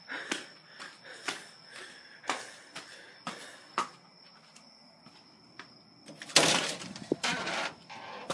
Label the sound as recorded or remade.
recorded